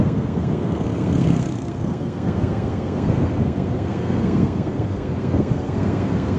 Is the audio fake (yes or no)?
yes